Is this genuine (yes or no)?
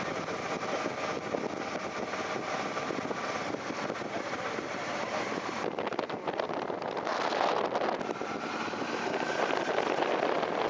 yes